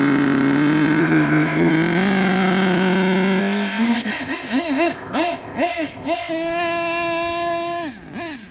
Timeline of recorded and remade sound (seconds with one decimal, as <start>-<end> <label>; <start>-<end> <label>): 0.0-1.0 recorded; 1.0-1.7 remade; 1.7-3.4 recorded; 3.4-6.3 remade; 6.3-8.5 recorded